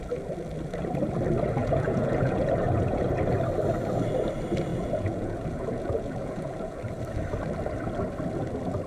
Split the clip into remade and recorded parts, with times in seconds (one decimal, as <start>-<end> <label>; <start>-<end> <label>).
0.0-1.6 recorded; 1.6-3.1 remade; 3.1-4.7 recorded; 4.7-6.8 remade; 6.8-8.9 recorded